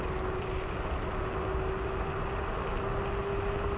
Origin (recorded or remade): recorded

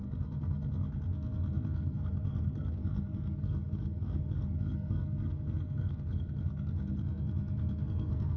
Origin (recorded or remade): remade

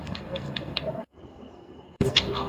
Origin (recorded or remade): remade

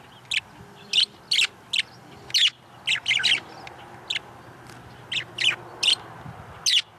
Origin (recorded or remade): recorded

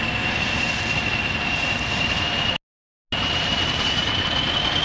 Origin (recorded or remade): recorded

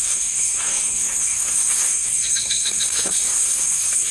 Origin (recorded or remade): remade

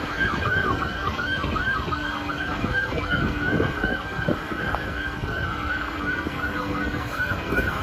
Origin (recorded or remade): remade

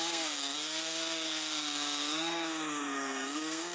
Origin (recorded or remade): remade